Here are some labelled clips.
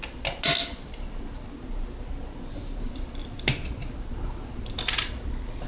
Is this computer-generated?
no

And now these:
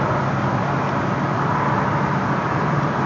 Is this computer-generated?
no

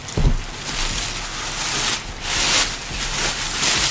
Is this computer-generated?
no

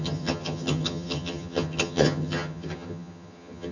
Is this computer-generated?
yes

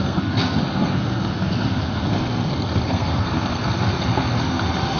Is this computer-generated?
yes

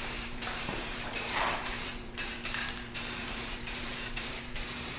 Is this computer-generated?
yes